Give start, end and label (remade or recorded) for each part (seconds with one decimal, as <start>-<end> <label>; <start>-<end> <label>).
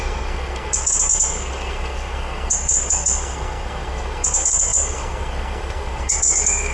0.0-6.7 remade